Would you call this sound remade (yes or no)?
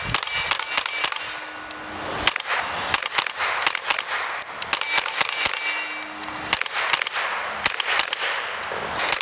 no